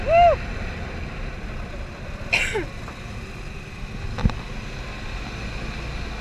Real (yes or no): yes